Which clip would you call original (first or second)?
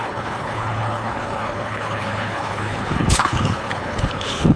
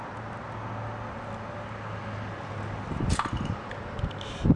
second